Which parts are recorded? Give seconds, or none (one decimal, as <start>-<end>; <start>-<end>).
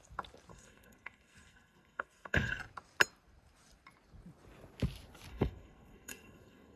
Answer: 0.0-0.5; 2.6-5.3